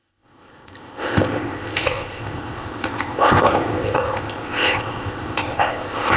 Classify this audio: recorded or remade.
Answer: remade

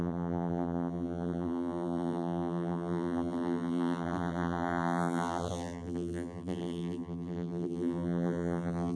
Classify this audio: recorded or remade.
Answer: remade